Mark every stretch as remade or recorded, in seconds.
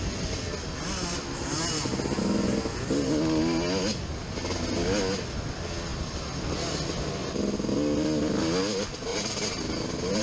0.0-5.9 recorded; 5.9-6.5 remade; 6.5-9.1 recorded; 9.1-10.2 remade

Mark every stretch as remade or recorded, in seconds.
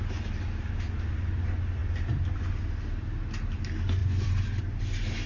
0.0-1.8 recorded; 1.8-2.5 remade; 2.5-4.0 recorded; 4.0-4.8 remade; 4.8-5.3 recorded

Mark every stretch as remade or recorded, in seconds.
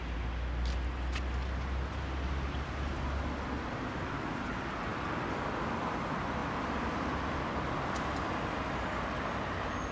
0.0-9.9 recorded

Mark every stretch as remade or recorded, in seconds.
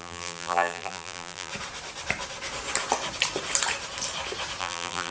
0.0-1.5 remade; 1.5-4.6 recorded; 4.6-5.1 remade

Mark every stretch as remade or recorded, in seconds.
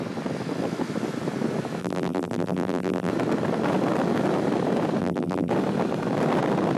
0.0-1.8 recorded; 1.8-3.1 remade; 3.1-5.0 recorded; 5.0-5.5 remade; 5.5-6.8 recorded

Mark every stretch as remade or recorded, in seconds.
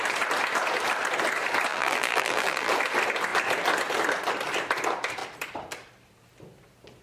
0.0-1.7 recorded; 1.7-2.7 remade; 2.7-7.0 recorded